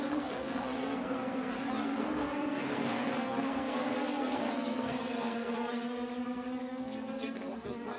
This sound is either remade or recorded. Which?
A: remade